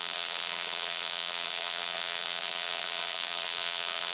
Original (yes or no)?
no